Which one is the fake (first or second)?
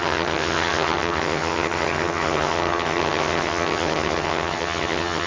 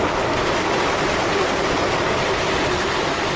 first